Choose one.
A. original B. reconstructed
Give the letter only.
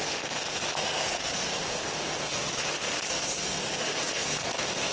B